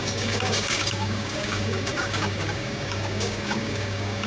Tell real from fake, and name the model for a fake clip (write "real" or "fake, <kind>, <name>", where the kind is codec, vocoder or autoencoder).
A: fake, codec, DAC